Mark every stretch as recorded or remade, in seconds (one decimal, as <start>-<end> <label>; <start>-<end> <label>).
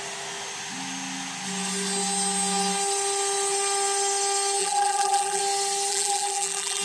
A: 0.0-4.6 recorded; 4.6-5.4 remade; 5.4-5.9 recorded; 5.9-6.8 remade